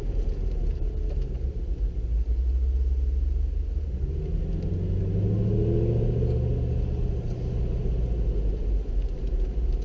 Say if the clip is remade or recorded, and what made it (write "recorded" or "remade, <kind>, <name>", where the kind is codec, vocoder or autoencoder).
recorded